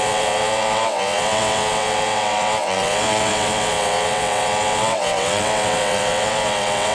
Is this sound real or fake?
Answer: fake